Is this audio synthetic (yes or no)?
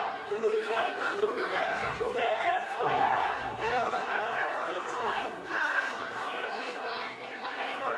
yes